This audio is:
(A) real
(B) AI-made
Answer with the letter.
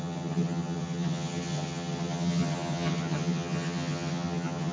B